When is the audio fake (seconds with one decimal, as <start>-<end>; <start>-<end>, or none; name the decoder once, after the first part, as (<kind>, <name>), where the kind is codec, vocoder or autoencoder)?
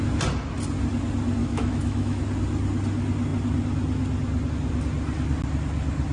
1.4-2.2 (autoencoder, DAC-VAE)